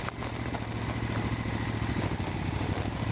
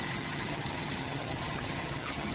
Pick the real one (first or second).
first